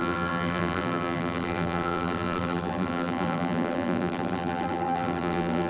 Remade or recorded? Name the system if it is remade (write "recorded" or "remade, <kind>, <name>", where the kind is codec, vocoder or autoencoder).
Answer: remade, vocoder, BigVGAN v2